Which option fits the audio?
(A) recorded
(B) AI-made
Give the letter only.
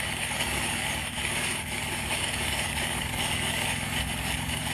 B